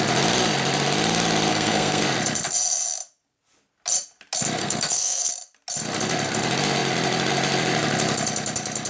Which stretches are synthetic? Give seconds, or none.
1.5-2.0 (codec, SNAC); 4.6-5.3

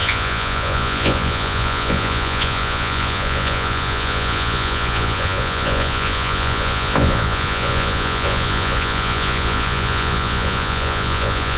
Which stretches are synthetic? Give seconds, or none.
0.0-11.6 (vocoder, Vocos)